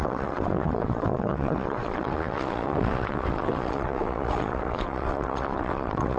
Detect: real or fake fake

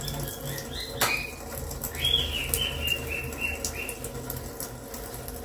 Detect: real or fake real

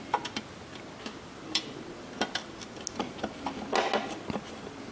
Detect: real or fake real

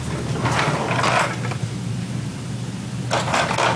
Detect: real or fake real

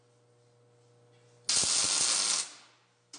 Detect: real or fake real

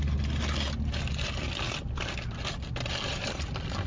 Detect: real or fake real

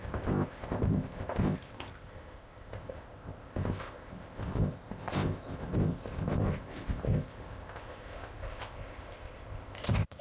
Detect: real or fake fake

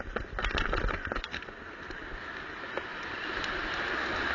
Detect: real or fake real